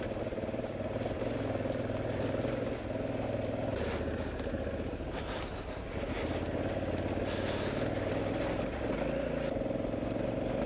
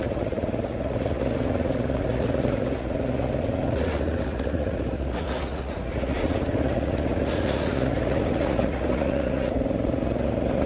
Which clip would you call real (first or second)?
first